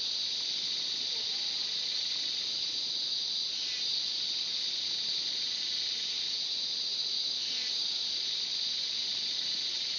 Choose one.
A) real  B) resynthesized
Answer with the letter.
A